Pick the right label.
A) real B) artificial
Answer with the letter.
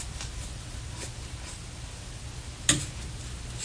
A